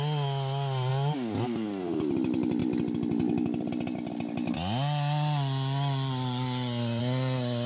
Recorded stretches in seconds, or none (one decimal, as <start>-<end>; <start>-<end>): 0.0-7.7